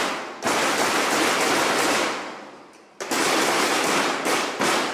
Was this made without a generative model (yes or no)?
yes